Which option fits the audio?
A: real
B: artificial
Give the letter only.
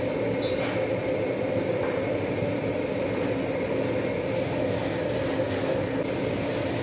A